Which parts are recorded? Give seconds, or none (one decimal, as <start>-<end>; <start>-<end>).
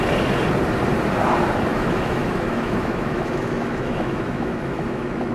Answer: 0.0-1.7